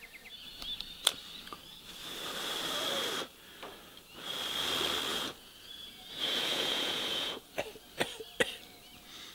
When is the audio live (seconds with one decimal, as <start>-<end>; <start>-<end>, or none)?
0.0-5.1; 7.5-9.3